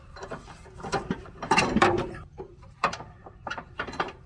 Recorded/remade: remade